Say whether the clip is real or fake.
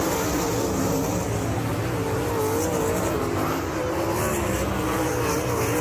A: real